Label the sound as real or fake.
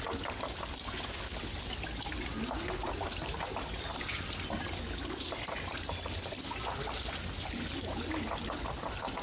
real